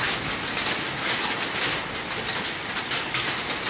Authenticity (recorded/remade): recorded